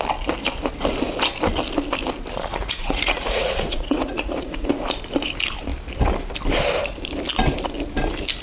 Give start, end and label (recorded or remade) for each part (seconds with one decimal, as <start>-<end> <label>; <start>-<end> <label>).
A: 0.0-2.5 recorded; 2.5-4.7 remade; 4.7-8.4 recorded